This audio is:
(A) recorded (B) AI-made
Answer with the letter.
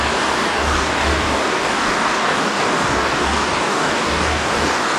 B